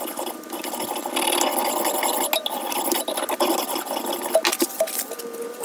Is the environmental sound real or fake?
real